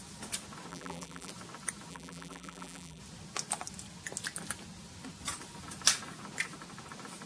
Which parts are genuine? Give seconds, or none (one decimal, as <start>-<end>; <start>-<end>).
0.0-0.7; 1.3-1.9; 3.0-7.3